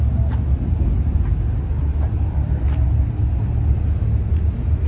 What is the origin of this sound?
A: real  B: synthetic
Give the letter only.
A